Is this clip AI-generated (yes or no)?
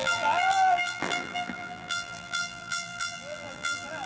yes